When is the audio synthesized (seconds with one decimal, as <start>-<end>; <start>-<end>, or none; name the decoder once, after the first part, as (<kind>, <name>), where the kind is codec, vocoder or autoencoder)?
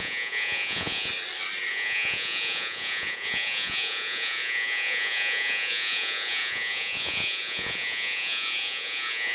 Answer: 0.0-1.1 (vocoder, Vocos); 1.7-9.3